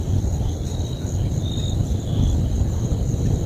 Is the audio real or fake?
real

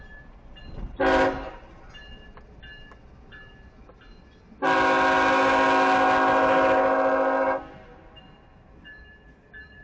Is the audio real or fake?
real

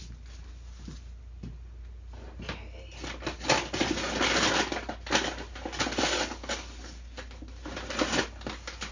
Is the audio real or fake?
real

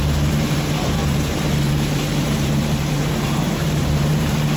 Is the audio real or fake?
fake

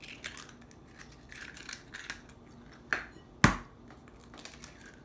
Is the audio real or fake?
real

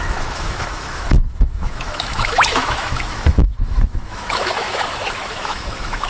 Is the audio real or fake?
fake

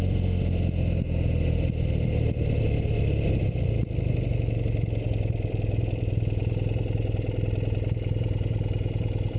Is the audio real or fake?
real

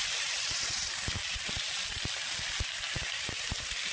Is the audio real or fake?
real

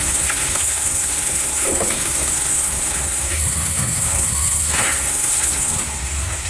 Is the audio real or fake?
fake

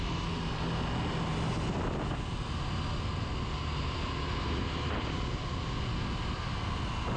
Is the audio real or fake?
real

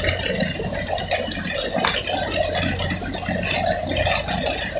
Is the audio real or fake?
real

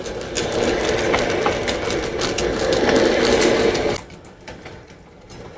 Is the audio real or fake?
real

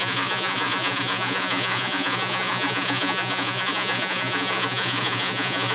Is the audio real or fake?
fake